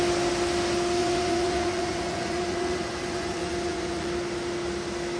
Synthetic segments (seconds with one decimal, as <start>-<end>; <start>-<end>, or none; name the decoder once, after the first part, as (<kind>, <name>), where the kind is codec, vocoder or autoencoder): 1.0-4.1 (vocoder, Vocos)